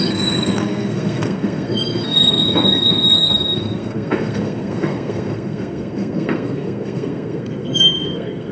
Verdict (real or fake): fake